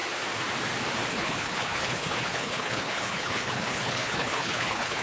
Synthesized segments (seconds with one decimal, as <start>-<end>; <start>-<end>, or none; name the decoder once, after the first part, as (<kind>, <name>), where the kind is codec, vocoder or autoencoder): 1.1-5.0 (codec, HILCodec)